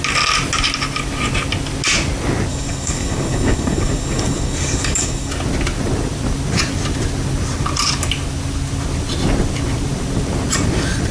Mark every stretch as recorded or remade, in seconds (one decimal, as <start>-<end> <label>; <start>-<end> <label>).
0.0-2.5 recorded; 2.5-5.3 remade; 5.3-11.1 recorded